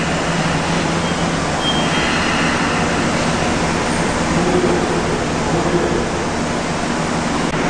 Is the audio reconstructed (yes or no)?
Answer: no